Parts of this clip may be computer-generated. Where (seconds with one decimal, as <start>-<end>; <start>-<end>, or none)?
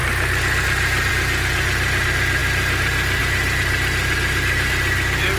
none